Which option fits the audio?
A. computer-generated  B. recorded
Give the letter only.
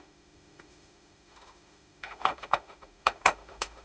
A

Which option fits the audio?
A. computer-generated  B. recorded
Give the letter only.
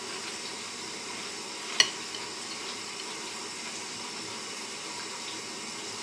B